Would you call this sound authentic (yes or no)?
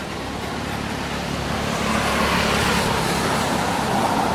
no